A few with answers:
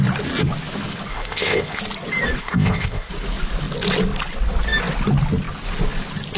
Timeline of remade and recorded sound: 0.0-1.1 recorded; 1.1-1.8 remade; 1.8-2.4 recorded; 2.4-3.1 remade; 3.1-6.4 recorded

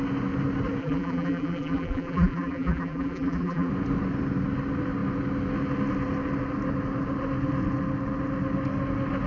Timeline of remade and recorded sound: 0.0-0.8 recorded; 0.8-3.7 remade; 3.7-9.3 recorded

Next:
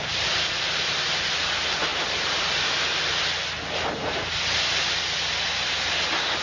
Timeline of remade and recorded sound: 0.0-6.4 recorded

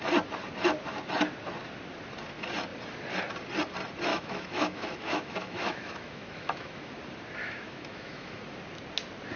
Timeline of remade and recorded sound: 0.0-4.1 recorded; 4.1-6.9 remade; 6.9-7.4 recorded; 7.4-8.4 remade; 8.4-9.4 recorded